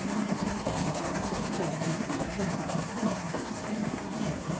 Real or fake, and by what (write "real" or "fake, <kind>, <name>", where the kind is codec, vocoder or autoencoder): fake, codec, SNAC